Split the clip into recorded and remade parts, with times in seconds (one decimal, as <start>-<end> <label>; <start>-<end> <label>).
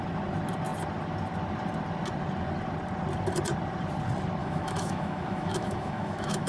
0.0-4.4 recorded; 4.4-6.5 remade